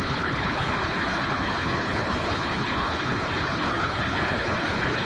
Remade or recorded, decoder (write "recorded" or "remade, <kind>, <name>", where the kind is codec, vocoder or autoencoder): remade, codec, HILCodec